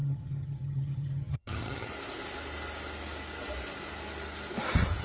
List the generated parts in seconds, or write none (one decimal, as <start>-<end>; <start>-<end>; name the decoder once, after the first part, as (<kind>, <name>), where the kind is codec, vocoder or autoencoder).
0.0-1.9 (vocoder, HiFi-GAN)